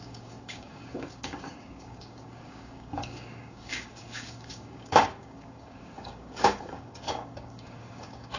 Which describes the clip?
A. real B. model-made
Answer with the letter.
B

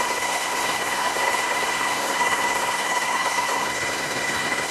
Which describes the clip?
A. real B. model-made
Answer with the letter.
B